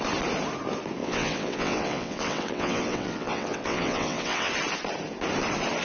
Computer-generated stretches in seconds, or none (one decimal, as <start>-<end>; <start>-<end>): 1.0-4.5